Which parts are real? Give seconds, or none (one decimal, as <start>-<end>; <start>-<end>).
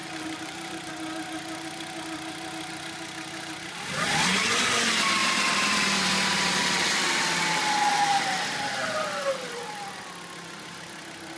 0.9-5.2; 6.6-7.9; 8.8-11.4